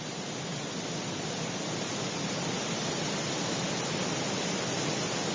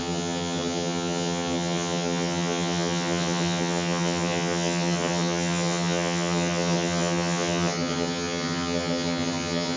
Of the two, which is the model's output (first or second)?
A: second